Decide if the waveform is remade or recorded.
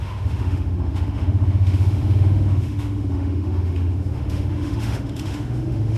remade